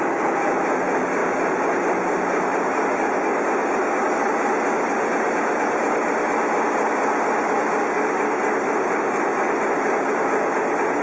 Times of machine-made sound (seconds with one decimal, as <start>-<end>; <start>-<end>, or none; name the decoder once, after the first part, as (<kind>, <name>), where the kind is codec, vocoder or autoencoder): none